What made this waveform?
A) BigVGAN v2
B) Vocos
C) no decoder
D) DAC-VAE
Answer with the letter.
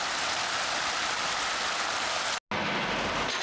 C